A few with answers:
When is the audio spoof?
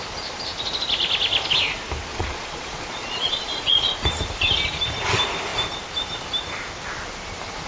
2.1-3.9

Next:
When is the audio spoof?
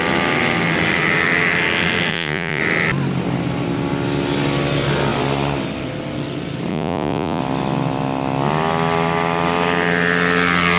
2.1-2.6; 6.7-7.4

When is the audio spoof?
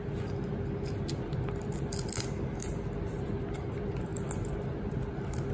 none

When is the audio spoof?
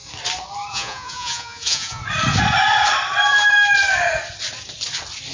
0.7-2.0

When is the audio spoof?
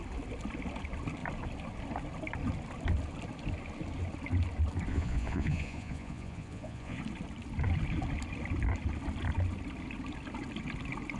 4.9-7.0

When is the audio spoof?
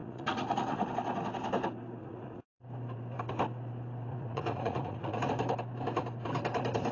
0.0-0.9; 2.0-2.6; 4.1-5.3